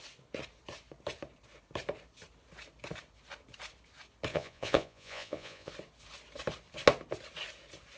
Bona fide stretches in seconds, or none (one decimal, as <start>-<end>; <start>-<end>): 0.0-4.3; 5.7-8.0